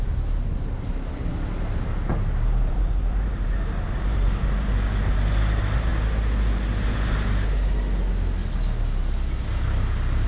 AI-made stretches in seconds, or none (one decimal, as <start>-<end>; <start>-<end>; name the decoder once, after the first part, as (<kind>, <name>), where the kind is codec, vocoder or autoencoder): 2.1-4.7 (vocoder, BigVGAN v2)